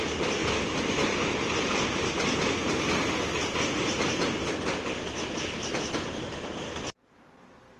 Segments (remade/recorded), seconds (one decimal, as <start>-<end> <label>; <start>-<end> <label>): 0.0-7.8 recorded